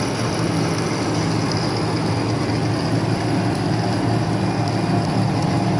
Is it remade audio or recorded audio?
recorded